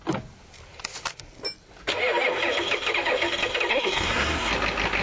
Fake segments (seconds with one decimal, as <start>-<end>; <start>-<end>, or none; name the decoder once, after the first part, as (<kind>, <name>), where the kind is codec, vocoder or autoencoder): 3.7-4.5 (codec, SNAC)